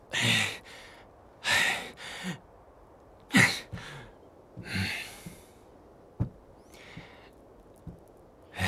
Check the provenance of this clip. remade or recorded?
recorded